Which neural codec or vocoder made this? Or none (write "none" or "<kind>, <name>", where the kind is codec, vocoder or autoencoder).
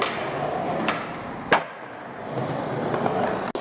none